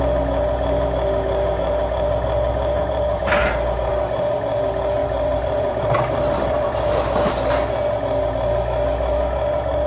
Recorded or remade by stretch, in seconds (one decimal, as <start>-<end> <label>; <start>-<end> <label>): 0.0-5.0 recorded; 5.0-7.3 remade; 7.3-9.9 recorded